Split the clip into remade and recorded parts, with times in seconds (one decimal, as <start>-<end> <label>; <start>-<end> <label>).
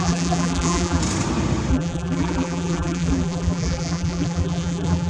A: 0.0-1.0 remade; 1.0-1.7 recorded; 1.7-5.1 remade